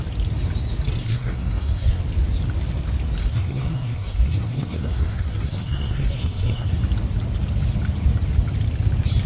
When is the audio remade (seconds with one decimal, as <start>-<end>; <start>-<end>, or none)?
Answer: 1.0-2.0; 3.2-6.8